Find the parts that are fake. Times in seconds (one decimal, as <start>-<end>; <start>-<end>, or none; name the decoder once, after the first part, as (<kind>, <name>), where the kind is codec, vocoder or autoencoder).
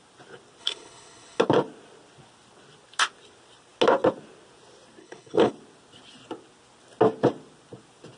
0.6-1.4 (codec, HILCodec); 5.0-5.5